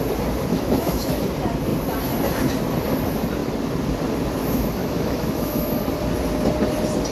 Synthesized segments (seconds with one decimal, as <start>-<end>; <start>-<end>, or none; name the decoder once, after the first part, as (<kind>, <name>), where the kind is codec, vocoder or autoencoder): 0.5-1.2 (autoencoder, DAC-VAE); 4.8-5.7